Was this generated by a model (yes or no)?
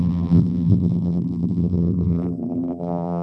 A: yes